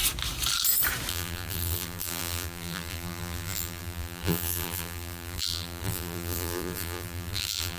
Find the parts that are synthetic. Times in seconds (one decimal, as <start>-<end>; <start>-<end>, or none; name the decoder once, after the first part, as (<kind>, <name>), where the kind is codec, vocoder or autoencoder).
1.1-7.8 (vocoder, BigVGAN v2)